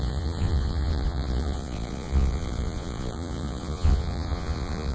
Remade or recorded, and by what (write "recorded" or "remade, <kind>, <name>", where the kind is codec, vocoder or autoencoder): remade, vocoder, Vocos